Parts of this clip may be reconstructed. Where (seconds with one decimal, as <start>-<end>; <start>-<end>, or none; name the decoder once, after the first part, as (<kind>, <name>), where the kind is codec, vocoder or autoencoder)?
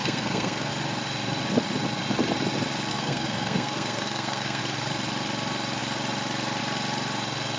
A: 0.0-0.7 (codec, SNAC); 2.9-4.6